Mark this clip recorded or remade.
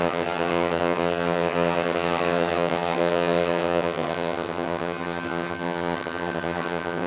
remade